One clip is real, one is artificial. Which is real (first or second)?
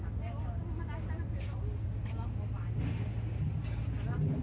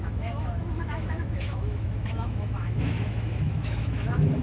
first